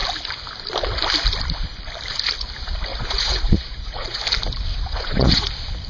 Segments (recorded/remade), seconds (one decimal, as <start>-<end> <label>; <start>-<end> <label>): 0.0-2.9 recorded; 2.9-4.2 remade; 4.2-4.7 recorded; 4.7-5.5 remade; 5.5-5.9 recorded